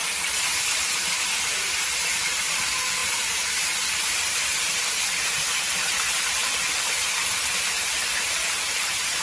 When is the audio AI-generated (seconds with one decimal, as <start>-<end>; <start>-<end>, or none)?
0.7-9.2